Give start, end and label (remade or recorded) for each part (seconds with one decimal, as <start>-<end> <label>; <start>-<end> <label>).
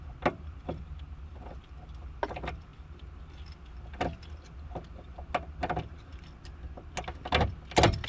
0.0-8.1 recorded